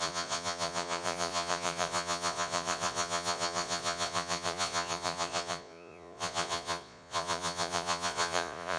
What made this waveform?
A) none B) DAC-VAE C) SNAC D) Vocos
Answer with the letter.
D